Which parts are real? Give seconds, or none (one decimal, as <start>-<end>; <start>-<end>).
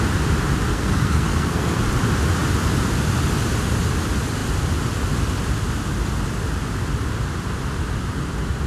0.0-0.7; 1.8-8.7